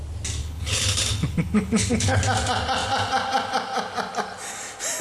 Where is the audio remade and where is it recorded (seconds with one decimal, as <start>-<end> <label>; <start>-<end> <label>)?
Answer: 0.0-0.4 recorded; 0.4-2.2 remade; 2.2-5.0 recorded

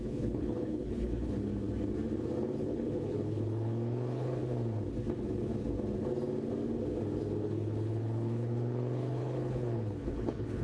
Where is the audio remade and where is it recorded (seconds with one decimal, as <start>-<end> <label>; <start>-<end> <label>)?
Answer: 0.0-1.5 remade; 1.5-2.6 recorded; 2.6-4.4 remade; 4.4-7.4 recorded; 7.4-10.6 remade

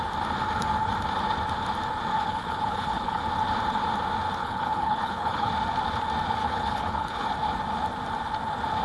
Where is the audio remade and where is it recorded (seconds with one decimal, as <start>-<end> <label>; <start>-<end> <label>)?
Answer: 0.0-2.1 recorded; 2.1-3.2 remade; 3.2-4.4 recorded; 4.4-5.5 remade; 5.5-6.4 recorded; 6.4-7.3 remade; 7.3-8.8 recorded

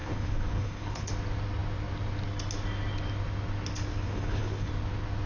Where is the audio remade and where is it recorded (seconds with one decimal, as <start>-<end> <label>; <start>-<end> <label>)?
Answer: 0.0-1.1 remade; 1.1-3.9 recorded; 3.9-4.7 remade; 4.7-5.3 recorded

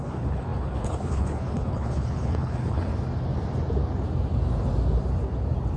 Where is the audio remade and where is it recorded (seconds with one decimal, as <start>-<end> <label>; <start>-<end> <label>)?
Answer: 0.0-2.9 remade; 2.9-5.8 recorded